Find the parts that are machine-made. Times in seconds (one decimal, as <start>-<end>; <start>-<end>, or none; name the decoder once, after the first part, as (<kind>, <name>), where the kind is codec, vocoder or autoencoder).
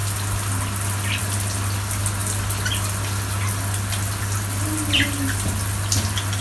none